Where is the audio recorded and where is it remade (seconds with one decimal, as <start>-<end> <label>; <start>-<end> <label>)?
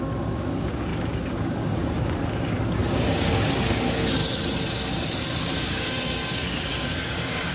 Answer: 0.0-4.2 remade; 4.2-5.6 recorded; 5.6-7.5 remade